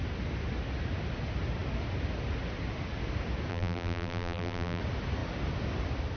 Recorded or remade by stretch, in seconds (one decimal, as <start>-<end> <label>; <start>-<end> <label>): 0.0-3.5 recorded; 3.5-4.8 remade; 4.8-6.2 recorded

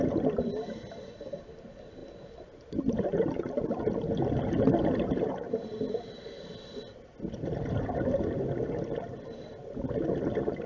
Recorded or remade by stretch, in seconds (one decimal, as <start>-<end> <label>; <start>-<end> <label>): 0.0-10.7 recorded

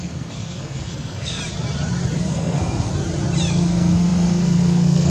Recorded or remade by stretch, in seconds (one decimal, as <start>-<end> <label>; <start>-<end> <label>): 0.0-1.4 remade; 1.4-2.2 recorded; 2.2-2.9 remade; 2.9-3.5 recorded; 3.5-5.1 remade

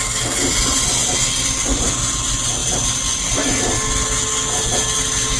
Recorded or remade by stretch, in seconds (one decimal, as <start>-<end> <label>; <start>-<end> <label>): 0.0-5.4 recorded

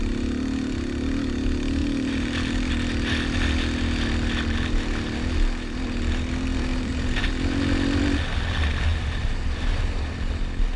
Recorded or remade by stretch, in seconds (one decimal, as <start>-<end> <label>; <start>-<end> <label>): 0.0-1.8 recorded; 1.8-2.7 remade; 2.7-6.7 recorded; 6.7-7.3 remade; 7.3-8.9 recorded; 8.9-9.8 remade; 9.8-10.8 recorded

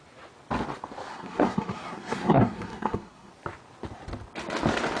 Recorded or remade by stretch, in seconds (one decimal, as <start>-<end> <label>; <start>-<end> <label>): 0.0-1.1 recorded; 1.1-3.3 remade; 3.3-5.0 recorded

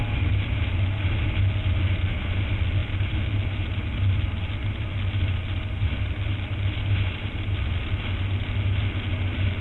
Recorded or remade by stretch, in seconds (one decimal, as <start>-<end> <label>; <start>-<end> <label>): 0.0-9.6 recorded